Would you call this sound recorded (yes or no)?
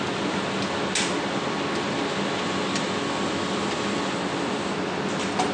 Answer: yes